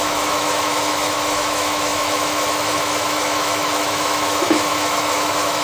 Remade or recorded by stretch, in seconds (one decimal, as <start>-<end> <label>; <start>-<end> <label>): 0.0-5.6 remade